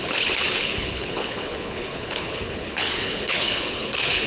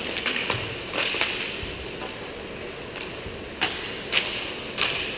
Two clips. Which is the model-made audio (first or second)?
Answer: first